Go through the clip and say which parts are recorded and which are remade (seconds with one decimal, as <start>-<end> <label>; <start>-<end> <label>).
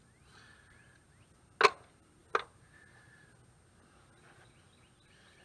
0.0-5.4 recorded